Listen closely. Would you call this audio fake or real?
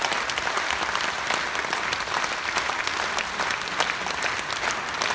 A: real